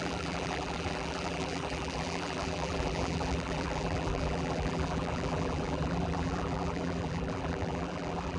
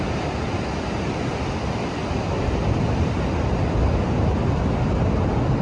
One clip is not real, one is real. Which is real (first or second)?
second